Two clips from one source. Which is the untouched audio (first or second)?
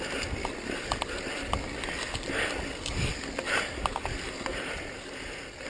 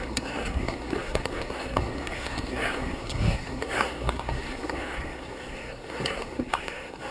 first